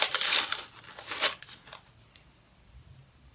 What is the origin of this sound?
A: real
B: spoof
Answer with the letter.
A